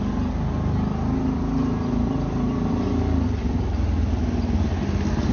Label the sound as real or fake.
real